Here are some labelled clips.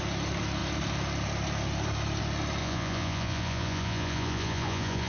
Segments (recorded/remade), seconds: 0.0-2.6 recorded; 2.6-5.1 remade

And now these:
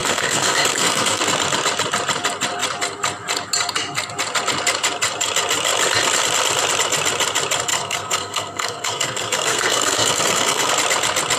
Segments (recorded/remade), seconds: 0.0-1.2 remade; 1.2-7.7 recorded; 7.7-10.7 remade; 10.7-11.4 recorded

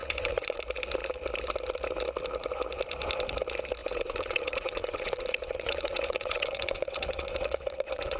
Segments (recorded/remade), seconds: 0.0-0.6 remade; 0.6-3.8 recorded; 3.8-8.2 remade

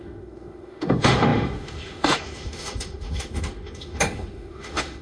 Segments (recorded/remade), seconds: 0.0-5.0 remade

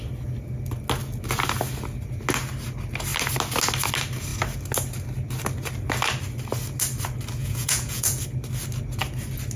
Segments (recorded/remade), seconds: 0.0-7.4 recorded; 7.4-8.2 remade; 8.2-9.6 recorded

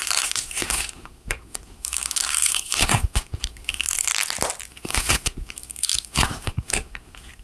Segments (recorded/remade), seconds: 0.0-4.1 remade; 4.1-4.7 recorded; 4.7-7.4 remade